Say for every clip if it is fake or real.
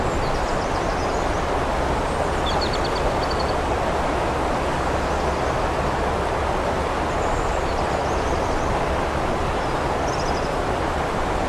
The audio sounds real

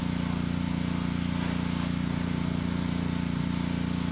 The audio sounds real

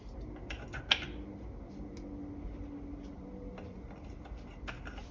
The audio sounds real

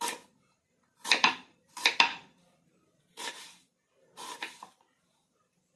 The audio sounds fake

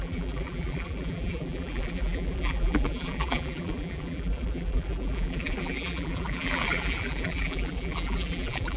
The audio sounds fake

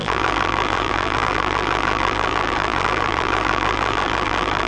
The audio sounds fake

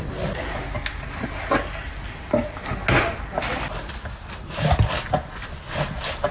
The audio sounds real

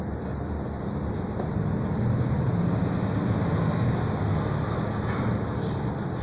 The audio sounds real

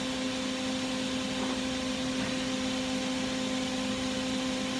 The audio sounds real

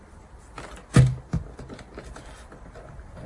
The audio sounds fake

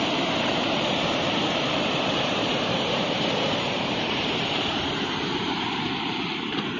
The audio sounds fake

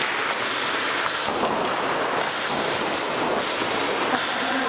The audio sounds real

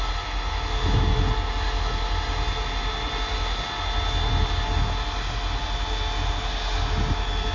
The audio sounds real